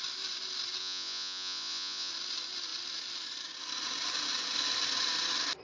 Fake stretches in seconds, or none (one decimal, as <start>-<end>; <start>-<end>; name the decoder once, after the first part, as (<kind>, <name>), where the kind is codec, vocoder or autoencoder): 0.8-2.1 (vocoder, Vocos)